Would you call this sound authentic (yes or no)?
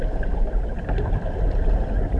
yes